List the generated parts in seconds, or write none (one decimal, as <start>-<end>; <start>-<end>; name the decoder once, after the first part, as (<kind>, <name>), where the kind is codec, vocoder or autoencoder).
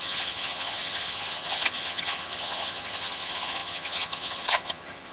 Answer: 0.0-5.1 (vocoder, HiFi-GAN)